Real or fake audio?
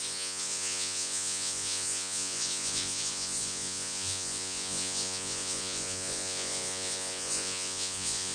fake